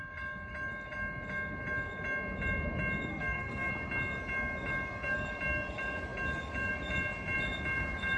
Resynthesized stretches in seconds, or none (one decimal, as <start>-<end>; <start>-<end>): 3.1-3.7